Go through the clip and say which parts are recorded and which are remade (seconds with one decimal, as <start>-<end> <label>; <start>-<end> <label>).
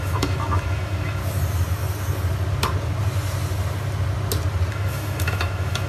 0.0-1.2 remade; 1.2-4.7 recorded; 4.7-5.9 remade